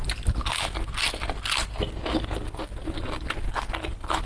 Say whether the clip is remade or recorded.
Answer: recorded